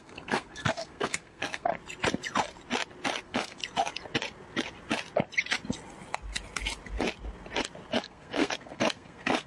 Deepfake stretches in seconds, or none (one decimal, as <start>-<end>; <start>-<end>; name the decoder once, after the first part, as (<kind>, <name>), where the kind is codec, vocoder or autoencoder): 0.0-1.7 (codec, SNAC); 3.2-3.6; 8.0-9.5